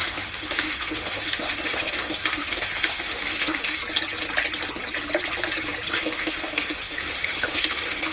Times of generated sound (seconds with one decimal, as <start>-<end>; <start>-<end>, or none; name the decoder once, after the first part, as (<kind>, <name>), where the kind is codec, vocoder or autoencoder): 0.0-3.8 (autoencoder, DAC-VAE); 5.9-8.1